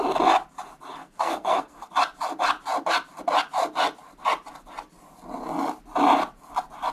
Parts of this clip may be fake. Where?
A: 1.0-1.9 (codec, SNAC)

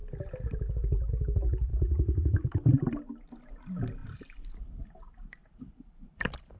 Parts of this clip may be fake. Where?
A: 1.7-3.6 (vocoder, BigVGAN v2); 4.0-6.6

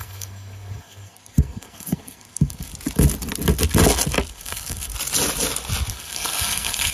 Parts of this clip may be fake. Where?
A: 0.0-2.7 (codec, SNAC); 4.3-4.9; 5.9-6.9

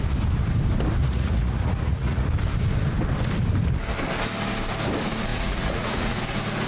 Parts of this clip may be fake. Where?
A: 1.0-2.3 (vocoder, Vocos); 5.3-6.2

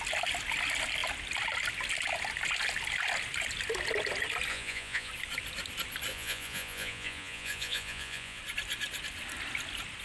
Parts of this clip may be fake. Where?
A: 4.5-5.1 (vocoder, Vocos); 6.1-8.4

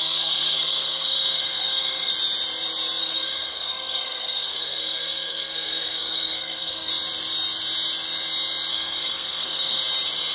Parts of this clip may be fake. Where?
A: 0.0-2.1 (codec, SNAC); 3.0-6.9; 8.7-9.8